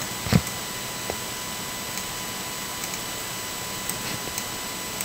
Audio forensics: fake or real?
real